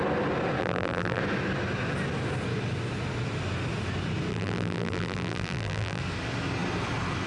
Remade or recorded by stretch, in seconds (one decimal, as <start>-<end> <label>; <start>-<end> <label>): 0.0-0.6 recorded; 0.6-1.2 remade; 1.2-4.3 recorded; 4.3-6.0 remade; 6.0-7.3 recorded